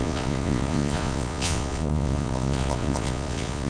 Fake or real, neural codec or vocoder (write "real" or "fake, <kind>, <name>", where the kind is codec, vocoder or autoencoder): fake, vocoder, Vocos